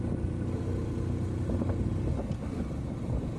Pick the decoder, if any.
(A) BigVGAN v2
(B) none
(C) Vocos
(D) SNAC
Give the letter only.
A